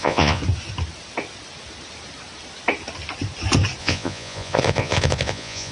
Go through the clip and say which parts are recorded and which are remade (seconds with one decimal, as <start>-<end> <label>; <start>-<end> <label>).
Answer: 0.0-0.4 remade; 0.4-3.8 recorded; 3.8-5.7 remade